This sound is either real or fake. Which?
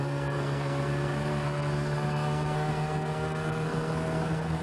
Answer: fake